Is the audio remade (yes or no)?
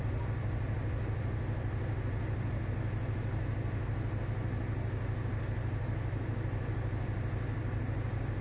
no